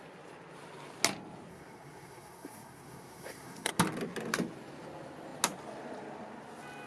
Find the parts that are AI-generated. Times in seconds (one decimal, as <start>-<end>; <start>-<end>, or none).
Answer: 1.5-3.7